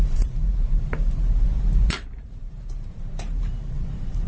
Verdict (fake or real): fake